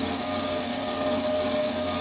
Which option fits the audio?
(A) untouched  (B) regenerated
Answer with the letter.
B